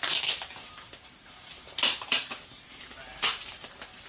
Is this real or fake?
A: fake